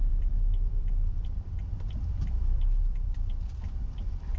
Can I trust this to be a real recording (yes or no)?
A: no